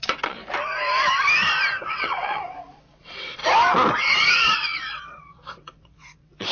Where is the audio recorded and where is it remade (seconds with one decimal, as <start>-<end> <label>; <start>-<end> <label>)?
0.0-0.4 remade; 0.4-1.8 recorded; 1.8-3.4 remade; 3.4-4.0 recorded; 4.0-6.5 remade